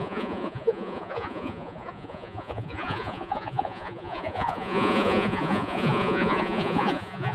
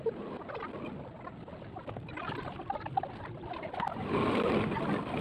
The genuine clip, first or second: second